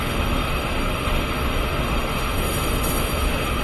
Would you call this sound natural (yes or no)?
no